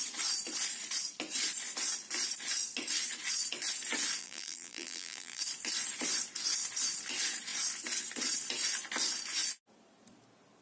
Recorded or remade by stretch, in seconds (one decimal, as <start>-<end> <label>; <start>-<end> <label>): 0.0-4.2 recorded; 4.2-5.4 remade; 5.4-10.6 recorded